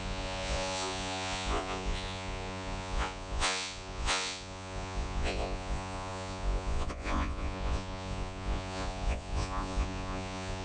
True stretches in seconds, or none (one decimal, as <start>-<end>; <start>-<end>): none